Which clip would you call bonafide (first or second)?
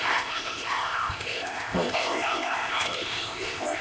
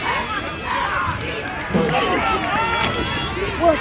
second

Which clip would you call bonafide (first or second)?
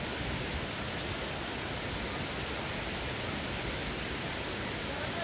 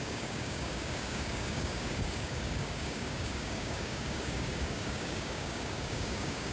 first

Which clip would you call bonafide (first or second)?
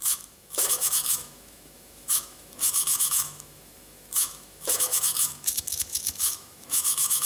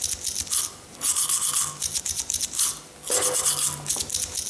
second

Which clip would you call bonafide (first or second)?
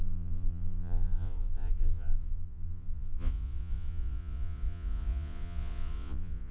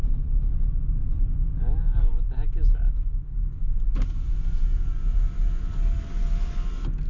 second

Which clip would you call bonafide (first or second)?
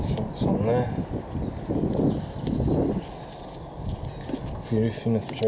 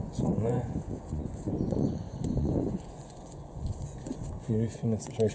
first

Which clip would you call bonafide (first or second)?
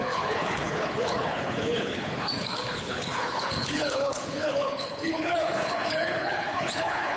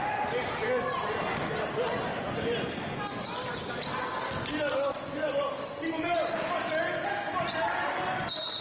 second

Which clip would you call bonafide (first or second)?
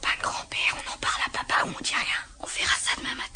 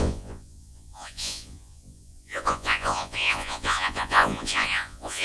first